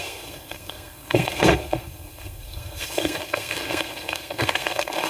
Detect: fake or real fake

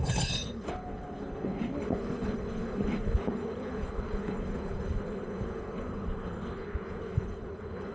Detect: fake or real fake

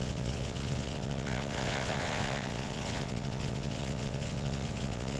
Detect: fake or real fake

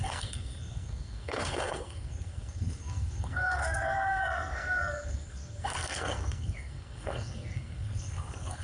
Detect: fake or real fake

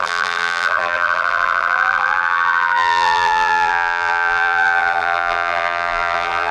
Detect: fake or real fake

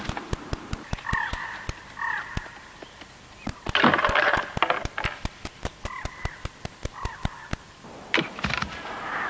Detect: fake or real fake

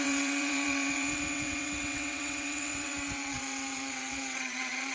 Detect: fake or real fake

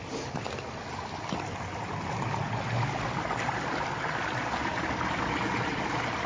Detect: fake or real real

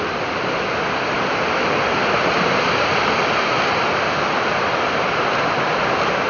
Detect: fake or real real